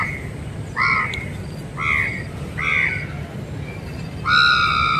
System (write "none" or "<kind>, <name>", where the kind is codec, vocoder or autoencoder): none